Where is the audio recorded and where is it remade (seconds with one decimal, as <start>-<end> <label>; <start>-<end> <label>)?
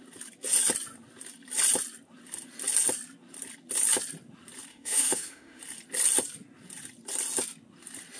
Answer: 0.0-4.7 recorded; 4.7-5.6 remade; 5.6-8.2 recorded